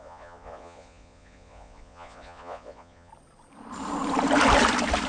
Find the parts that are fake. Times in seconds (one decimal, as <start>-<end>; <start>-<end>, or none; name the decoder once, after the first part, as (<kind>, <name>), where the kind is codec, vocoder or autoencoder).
0.0-3.1 (vocoder, Vocos)